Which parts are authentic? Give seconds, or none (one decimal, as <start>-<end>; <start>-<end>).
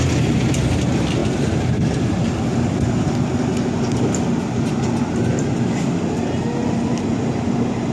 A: 0.0-7.9